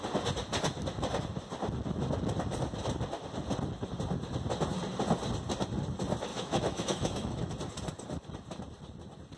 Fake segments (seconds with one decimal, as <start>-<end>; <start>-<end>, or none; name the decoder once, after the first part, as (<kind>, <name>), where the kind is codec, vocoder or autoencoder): 6.3-7.5 (autoencoder, DAC-VAE)